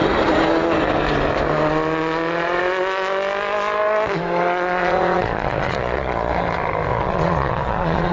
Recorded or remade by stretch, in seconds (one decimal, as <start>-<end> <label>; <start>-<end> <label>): 0.0-4.8 recorded; 4.8-6.3 remade; 6.3-6.9 recorded; 6.9-8.1 remade